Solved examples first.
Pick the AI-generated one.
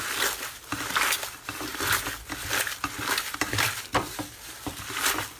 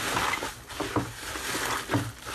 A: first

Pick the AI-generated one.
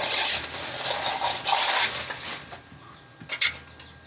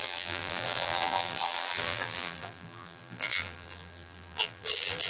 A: second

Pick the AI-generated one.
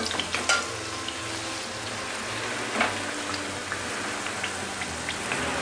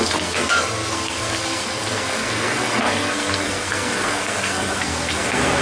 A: second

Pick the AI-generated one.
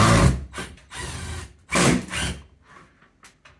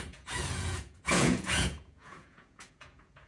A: second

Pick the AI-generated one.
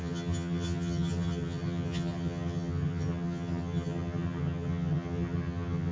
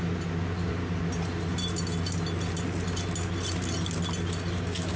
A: first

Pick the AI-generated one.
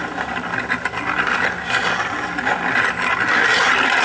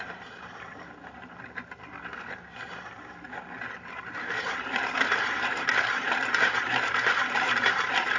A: second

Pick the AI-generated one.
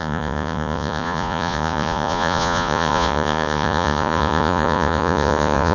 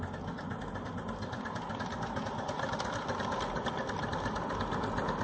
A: first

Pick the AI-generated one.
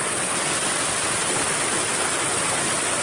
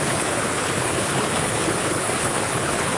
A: second